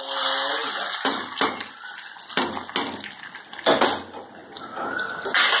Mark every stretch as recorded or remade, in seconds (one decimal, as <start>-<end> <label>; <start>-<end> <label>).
0.0-5.6 recorded